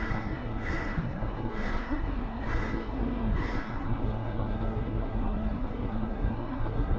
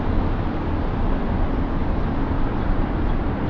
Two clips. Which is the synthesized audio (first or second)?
first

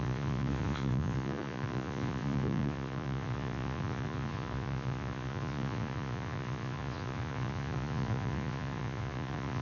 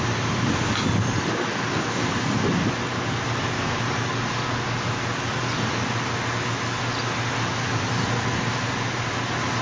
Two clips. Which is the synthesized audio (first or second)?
first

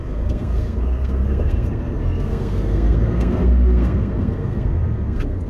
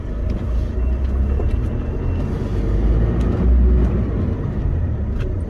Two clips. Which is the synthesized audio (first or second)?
first